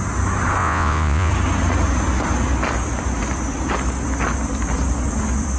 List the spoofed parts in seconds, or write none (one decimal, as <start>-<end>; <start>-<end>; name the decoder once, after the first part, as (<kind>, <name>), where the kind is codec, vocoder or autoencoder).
0.6-1.3 (vocoder, Vocos)